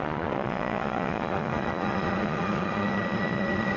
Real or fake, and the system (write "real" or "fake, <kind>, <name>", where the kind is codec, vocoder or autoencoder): fake, vocoder, Vocos